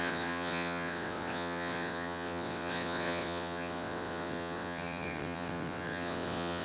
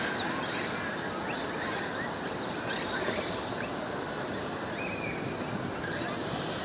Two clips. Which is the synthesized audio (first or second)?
first